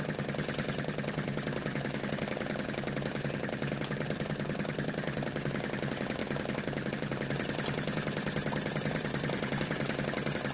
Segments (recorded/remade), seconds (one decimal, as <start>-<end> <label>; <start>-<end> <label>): 0.0-10.5 recorded

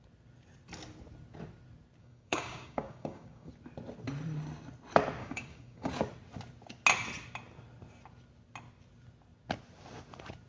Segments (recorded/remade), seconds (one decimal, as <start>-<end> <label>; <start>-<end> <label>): 0.0-2.0 recorded; 2.0-3.5 remade; 3.5-5.2 recorded; 5.2-5.9 remade; 5.9-10.5 recorded